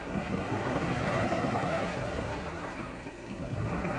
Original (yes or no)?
no